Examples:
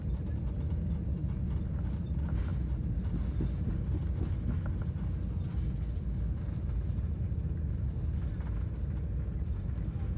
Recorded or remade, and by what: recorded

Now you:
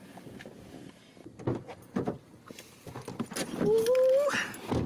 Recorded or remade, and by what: recorded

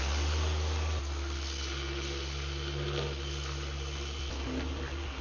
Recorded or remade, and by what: recorded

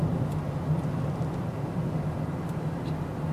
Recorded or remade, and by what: recorded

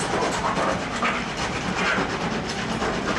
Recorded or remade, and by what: recorded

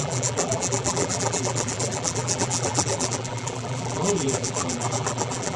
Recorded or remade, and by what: remade, vocoder, BigVGAN v2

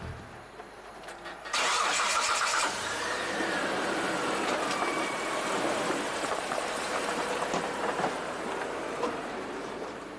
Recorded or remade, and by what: remade, vocoder, BigVGAN v2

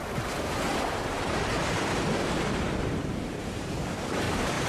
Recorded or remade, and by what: remade, vocoder, BigVGAN v2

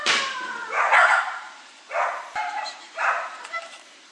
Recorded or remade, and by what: remade, vocoder, BigVGAN v2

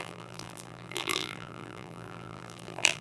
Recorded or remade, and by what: remade, vocoder, BigVGAN v2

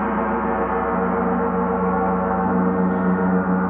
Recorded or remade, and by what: recorded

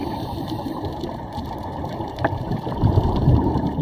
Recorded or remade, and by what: remade, vocoder, BigVGAN v2